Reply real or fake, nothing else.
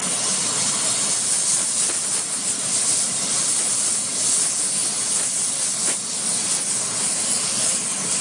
fake